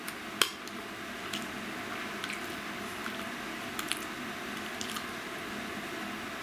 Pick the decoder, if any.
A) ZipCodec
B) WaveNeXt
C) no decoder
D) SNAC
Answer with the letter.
C